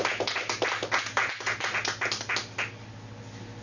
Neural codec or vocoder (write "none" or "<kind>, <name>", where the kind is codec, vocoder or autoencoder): none